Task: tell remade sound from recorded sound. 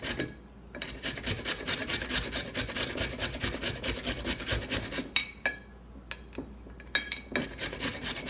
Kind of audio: recorded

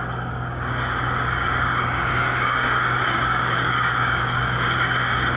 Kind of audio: remade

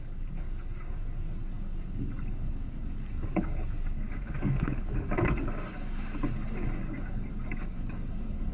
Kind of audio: remade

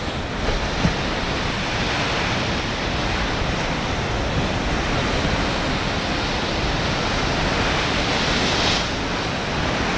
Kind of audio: recorded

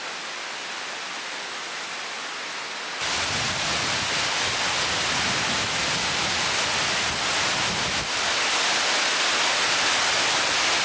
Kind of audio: recorded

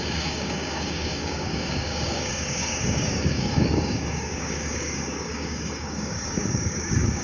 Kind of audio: remade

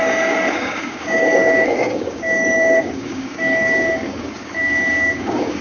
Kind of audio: remade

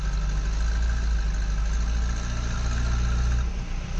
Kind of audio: recorded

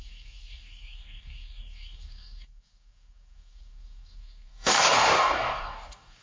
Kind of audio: remade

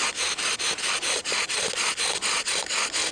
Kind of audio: recorded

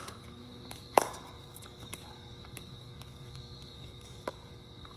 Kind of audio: remade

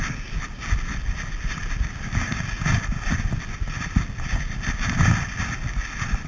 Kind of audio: recorded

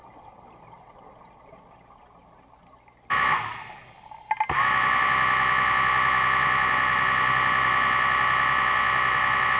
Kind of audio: recorded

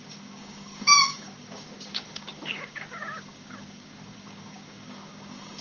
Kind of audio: remade